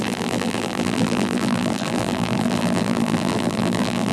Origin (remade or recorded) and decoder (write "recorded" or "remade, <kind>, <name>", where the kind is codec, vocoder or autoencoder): remade, vocoder, BigVGAN v2